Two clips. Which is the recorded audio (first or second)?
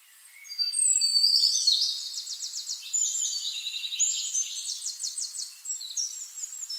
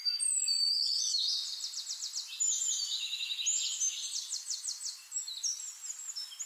second